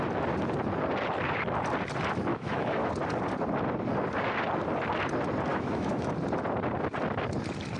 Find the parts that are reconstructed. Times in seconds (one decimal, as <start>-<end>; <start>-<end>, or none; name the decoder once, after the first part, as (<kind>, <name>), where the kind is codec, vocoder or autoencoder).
2.3-2.9 (autoencoder, DAC-VAE); 5.5-6.1